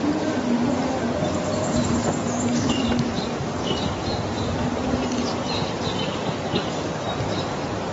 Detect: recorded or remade remade